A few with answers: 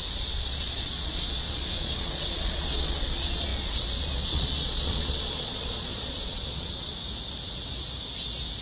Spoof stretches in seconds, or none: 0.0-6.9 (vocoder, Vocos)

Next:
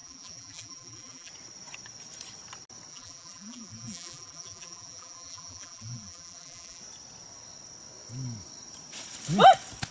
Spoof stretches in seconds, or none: 0.0-1.3 (vocoder, BigVGAN v2); 2.9-6.8

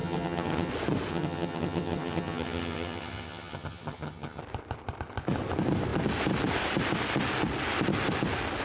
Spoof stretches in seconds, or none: 0.0-0.7 (vocoder, HiFi-GAN); 1.1-4.4

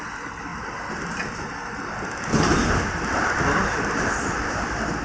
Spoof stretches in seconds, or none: none

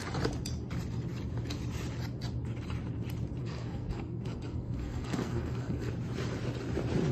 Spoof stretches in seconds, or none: 3.4-5.9 (codec, SNAC)